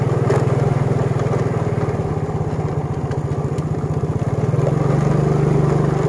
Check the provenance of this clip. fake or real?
real